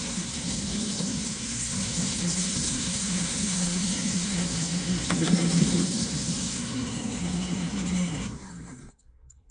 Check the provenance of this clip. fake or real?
fake